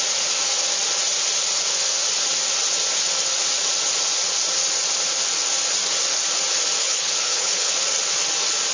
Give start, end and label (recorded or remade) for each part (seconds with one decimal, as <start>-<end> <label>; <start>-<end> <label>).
0.0-6.8 recorded; 6.8-7.7 remade; 7.7-8.7 recorded

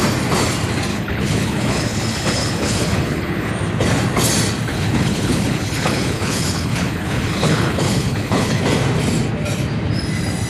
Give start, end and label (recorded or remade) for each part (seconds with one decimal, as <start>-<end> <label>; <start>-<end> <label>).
0.0-0.9 recorded; 0.9-3.5 remade; 3.5-4.7 recorded; 4.7-8.6 remade; 8.6-10.5 recorded

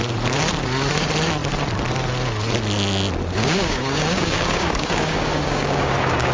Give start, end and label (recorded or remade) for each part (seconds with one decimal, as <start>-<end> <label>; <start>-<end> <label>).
0.0-3.4 recorded; 3.4-6.3 remade

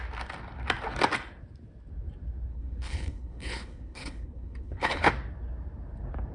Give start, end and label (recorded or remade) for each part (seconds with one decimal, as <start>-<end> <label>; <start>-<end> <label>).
0.0-2.5 recorded; 2.5-5.1 remade; 5.1-6.3 recorded

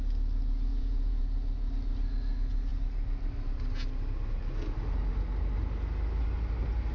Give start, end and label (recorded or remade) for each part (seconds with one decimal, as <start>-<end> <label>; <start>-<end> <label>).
0.0-0.7 recorded; 0.7-1.2 remade; 1.2-6.9 recorded

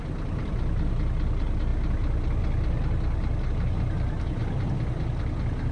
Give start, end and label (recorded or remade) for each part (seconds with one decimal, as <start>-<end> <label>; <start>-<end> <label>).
0.0-5.7 recorded

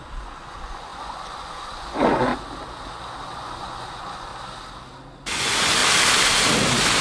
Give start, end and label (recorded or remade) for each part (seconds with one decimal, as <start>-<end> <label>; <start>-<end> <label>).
0.0-2.3 remade; 2.3-3.3 recorded; 3.3-4.3 remade; 4.3-5.1 recorded; 5.1-5.8 remade; 5.8-7.0 recorded

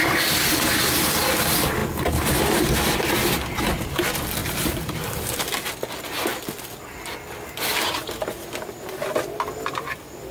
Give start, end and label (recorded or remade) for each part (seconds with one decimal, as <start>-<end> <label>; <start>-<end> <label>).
0.0-4.4 recorded; 4.4-5.4 remade; 5.4-10.3 recorded